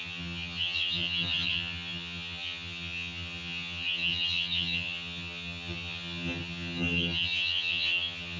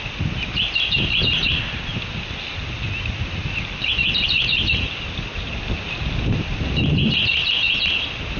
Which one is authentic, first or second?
second